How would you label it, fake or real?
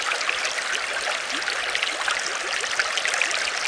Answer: real